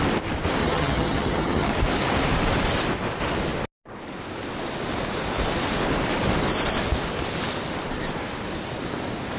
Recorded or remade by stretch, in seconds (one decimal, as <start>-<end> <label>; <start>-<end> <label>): 0.0-0.6 recorded; 0.6-1.7 remade; 1.7-9.4 recorded

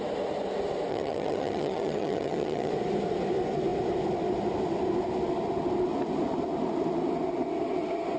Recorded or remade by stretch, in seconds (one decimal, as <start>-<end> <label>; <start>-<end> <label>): 0.0-0.9 recorded; 0.9-2.7 remade; 2.7-8.2 recorded

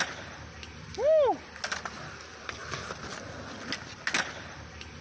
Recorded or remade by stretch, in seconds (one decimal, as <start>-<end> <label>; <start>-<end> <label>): 0.0-5.0 recorded

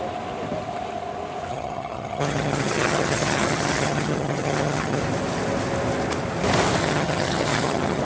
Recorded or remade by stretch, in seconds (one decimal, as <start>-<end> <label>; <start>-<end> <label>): 0.0-1.5 recorded; 1.5-5.0 remade; 5.0-6.8 recorded; 6.8-8.0 remade

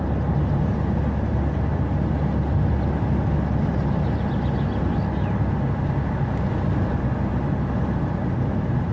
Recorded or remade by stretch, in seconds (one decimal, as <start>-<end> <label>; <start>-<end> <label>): 0.0-8.9 recorded

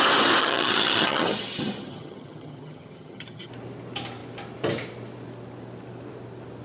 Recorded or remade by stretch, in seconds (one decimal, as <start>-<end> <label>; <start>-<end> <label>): 0.0-0.4 recorded; 0.4-3.5 remade; 3.5-6.6 recorded

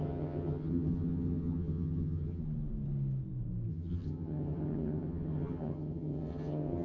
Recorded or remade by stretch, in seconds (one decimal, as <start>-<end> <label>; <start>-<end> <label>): 0.0-2.4 remade; 2.4-3.7 recorded; 3.7-6.8 remade

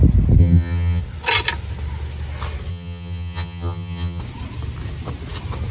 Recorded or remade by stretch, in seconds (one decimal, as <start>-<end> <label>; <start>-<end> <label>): 0.0-0.4 recorded; 0.4-1.0 remade; 1.0-2.7 recorded; 2.7-4.2 remade; 4.2-5.7 recorded